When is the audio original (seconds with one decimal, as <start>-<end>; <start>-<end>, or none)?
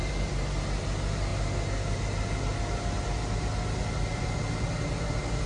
0.0-5.5